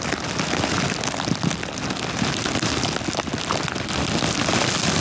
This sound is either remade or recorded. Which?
recorded